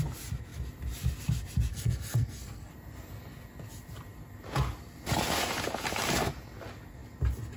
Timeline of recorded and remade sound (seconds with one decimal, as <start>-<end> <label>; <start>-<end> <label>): 0.0-1.7 recorded; 1.7-2.7 remade; 2.7-7.6 recorded